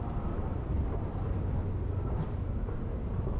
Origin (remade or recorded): recorded